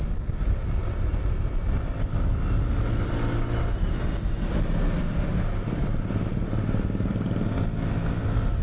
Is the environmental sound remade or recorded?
recorded